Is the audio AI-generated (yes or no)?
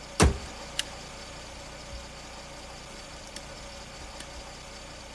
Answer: no